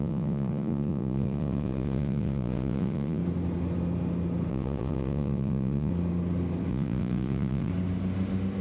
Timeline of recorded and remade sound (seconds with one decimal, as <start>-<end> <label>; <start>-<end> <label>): 0.0-3.2 remade; 3.2-4.5 recorded; 4.5-5.9 remade; 5.9-6.7 recorded; 6.7-7.7 remade; 7.7-8.6 recorded

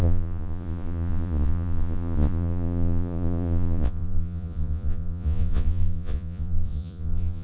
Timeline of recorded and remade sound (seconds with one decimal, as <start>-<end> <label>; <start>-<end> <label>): 0.0-7.4 remade

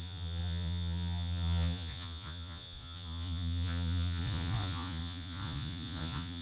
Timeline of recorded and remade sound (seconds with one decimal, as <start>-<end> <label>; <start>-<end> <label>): 0.0-6.4 remade

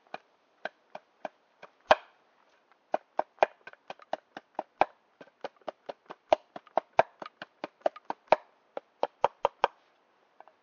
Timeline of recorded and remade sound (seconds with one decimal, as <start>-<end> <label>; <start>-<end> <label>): 0.0-10.6 recorded

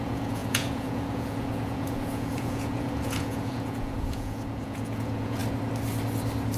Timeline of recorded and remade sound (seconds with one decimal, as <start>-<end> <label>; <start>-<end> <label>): 0.0-5.4 remade; 5.4-6.6 recorded